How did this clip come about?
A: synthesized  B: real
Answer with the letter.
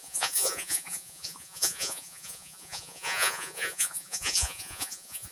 A